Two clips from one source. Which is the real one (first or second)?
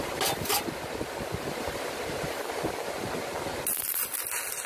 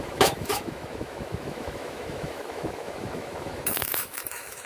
first